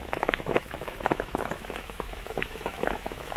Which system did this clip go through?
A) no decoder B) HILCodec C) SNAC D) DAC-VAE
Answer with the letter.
D